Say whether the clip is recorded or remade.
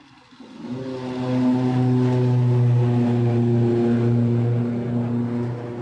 recorded